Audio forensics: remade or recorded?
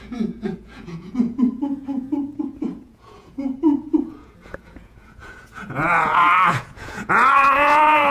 remade